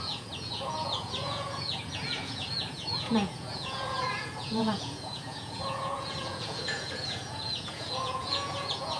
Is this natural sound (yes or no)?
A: no